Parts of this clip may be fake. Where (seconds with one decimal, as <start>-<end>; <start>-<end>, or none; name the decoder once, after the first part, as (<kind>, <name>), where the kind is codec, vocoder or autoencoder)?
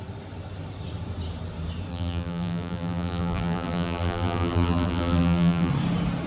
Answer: 1.9-5.7 (vocoder, BigVGAN v2)